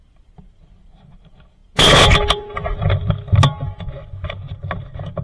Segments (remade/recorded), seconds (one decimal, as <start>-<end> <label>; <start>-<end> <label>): 0.0-5.2 recorded